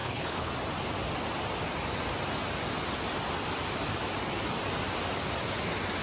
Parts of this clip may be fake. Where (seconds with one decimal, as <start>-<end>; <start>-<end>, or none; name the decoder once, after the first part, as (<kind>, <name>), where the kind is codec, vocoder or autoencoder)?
0.0-0.5 (codec, HILCodec)